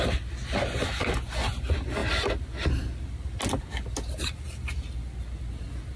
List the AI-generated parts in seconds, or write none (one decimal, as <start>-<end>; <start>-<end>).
none

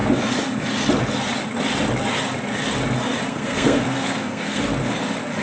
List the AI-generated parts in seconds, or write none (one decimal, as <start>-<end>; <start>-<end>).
3.3-4.6

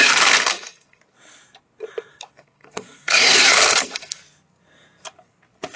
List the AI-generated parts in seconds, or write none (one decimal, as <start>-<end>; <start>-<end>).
0.0-1.0; 2.1-4.2

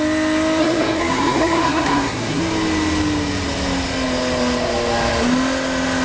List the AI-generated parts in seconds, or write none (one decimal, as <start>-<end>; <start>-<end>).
0.6-2.4

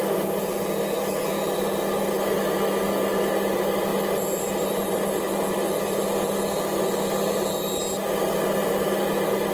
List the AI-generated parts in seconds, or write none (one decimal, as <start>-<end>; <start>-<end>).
none

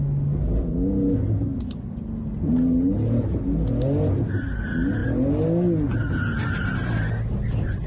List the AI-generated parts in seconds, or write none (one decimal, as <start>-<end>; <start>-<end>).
none

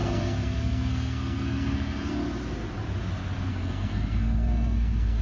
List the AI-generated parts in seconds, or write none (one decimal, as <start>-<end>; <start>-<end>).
0.0-2.1; 3.5-5.2